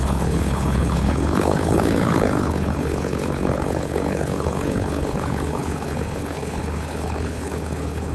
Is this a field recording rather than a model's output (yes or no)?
no